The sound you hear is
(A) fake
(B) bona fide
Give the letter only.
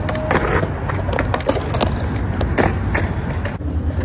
B